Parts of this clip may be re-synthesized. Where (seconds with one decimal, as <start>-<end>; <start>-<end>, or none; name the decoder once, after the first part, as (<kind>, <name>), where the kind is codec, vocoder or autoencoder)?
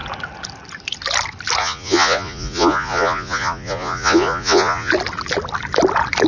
1.6-4.9 (vocoder, Vocos)